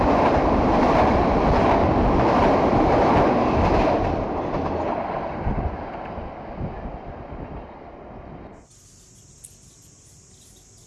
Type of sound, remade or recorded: recorded